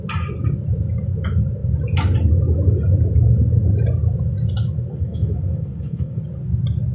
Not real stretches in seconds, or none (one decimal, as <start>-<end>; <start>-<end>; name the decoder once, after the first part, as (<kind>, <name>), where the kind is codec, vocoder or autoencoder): 4.9-6.2 (codec, SNAC)